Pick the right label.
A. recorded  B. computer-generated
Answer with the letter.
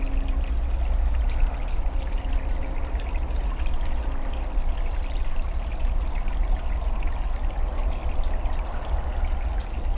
A